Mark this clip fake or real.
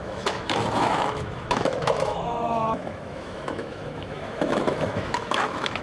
fake